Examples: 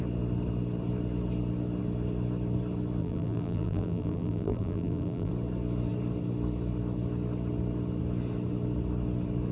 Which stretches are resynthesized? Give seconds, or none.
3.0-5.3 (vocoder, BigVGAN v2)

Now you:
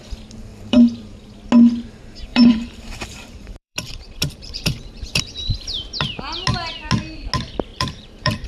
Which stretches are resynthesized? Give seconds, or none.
0.5-1.1 (vocoder, BigVGAN v2); 2.3-5.2; 7.7-8.5

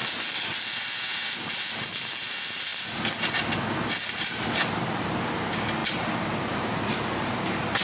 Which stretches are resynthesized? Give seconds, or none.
1.3-2.7 (vocoder, BigVGAN v2); 4.1-7.8

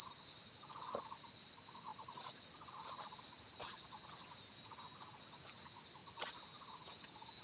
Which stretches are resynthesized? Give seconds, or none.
none